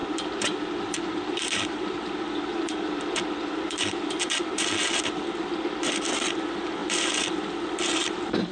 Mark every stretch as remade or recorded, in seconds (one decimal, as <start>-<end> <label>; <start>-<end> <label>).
0.0-8.5 remade